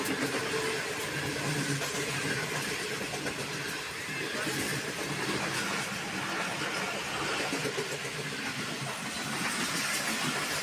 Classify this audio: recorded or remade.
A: recorded